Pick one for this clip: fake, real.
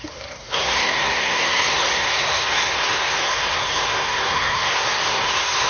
fake